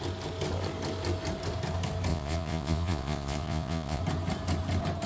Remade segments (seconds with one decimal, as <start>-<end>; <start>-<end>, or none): 2.1-4.0